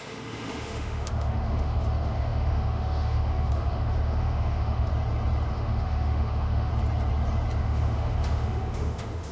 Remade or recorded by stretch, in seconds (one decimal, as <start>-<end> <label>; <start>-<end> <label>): 0.0-4.9 remade; 4.9-5.5 recorded; 5.5-6.7 remade; 6.7-7.6 recorded; 7.6-9.3 remade